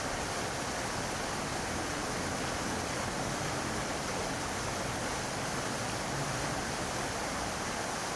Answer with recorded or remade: recorded